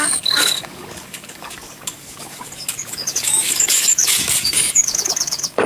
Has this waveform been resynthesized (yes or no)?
yes